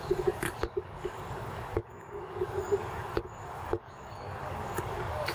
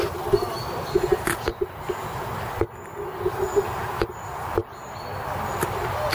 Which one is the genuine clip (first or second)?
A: second